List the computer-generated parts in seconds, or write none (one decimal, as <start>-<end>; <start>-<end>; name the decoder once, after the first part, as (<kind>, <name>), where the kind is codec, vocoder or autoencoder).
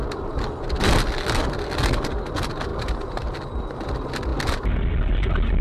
none